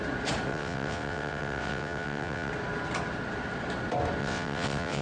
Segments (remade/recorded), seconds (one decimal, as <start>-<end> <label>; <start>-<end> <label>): 0.0-0.5 recorded; 0.5-2.5 remade; 2.5-4.2 recorded; 4.2-5.0 remade